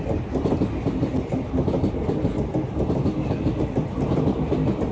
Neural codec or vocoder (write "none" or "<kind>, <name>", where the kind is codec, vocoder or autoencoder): none